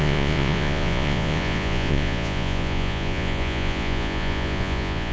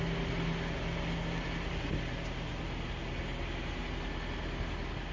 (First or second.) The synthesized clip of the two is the first